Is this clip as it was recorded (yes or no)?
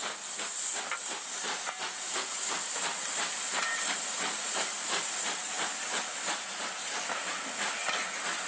yes